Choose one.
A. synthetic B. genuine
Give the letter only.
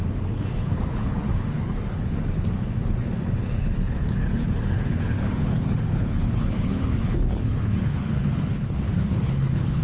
A